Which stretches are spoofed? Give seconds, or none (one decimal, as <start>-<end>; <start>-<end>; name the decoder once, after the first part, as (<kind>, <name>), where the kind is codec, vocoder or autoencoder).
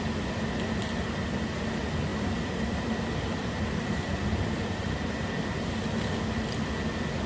2.1-5.7 (vocoder, BigVGAN v2)